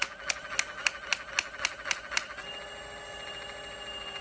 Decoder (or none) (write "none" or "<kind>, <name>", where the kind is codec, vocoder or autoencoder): none